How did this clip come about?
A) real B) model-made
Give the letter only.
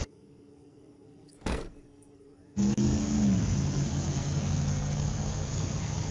B